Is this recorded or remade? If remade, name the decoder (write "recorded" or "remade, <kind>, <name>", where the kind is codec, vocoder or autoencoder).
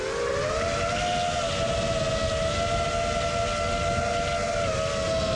recorded